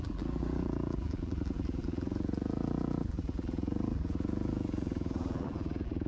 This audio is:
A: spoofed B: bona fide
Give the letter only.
A